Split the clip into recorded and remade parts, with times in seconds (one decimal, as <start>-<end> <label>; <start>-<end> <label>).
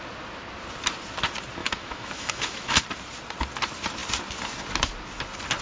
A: 0.0-1.6 recorded; 1.6-2.8 remade; 2.8-5.6 recorded